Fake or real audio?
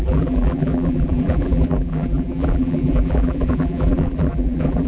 fake